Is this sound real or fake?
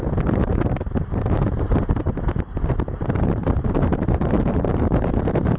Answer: fake